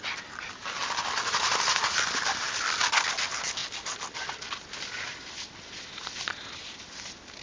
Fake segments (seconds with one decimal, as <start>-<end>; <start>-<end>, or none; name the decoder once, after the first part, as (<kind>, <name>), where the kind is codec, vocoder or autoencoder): none